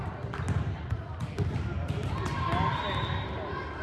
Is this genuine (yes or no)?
yes